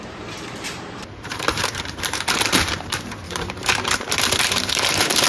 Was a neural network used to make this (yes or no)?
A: yes